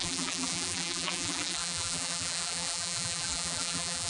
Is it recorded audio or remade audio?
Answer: remade